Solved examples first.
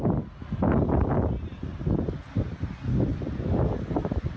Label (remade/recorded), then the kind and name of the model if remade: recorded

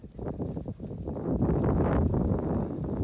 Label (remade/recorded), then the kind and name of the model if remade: recorded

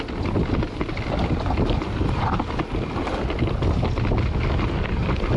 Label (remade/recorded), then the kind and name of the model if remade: recorded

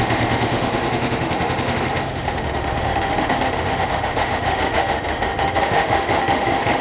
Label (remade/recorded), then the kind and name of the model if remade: remade, autoencoder, DAC-VAE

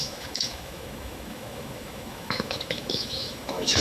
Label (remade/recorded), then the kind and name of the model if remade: remade, autoencoder, DAC-VAE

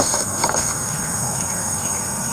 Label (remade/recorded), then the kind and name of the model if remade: remade, codec, SNAC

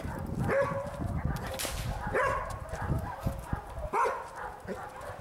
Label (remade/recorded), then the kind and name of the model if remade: recorded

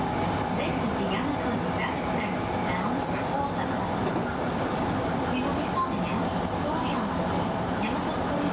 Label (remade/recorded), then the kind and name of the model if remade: recorded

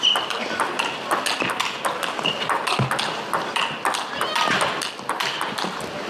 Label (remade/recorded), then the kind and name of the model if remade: recorded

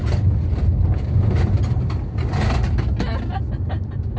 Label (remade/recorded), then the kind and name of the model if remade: recorded